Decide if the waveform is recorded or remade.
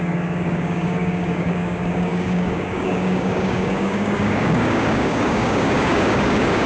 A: remade